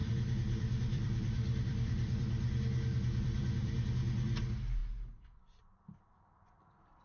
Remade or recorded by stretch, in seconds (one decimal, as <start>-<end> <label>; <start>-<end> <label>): 0.0-3.7 remade; 3.7-7.0 recorded